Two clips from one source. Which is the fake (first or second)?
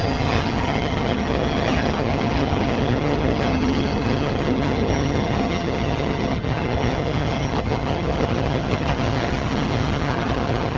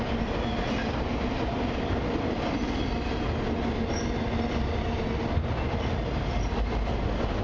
first